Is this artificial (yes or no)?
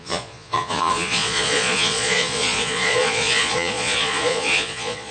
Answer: yes